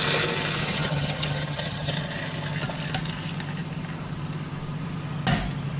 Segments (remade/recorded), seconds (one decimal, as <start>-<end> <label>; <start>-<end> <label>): 0.0-0.6 recorded; 0.6-1.9 remade; 1.9-5.8 recorded